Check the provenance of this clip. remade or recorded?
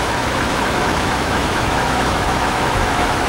remade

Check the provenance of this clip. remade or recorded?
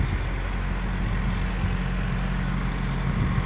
recorded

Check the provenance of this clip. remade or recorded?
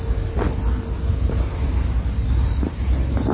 recorded